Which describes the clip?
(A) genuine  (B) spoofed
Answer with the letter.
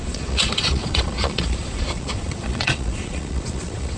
B